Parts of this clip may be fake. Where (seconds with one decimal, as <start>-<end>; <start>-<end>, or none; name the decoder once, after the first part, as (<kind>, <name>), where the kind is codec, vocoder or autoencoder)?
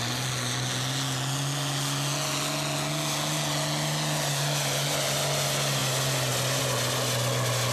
none